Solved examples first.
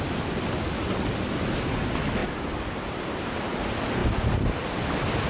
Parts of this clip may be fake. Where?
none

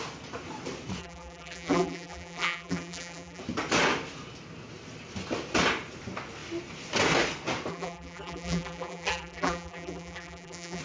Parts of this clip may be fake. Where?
1.0-3.4 (vocoder, BigVGAN v2); 7.7-10.8

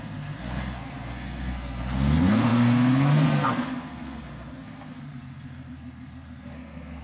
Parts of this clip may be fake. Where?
0.0-7.0 (codec, SNAC)